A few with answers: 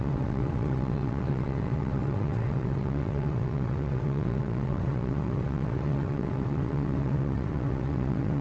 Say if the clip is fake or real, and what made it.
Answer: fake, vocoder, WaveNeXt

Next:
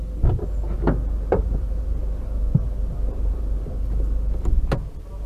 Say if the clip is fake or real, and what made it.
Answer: real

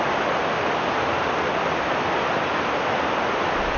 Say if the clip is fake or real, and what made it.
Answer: real